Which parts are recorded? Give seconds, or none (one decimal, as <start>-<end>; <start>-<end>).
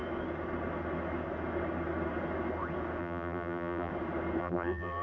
0.0-3.0; 3.9-4.4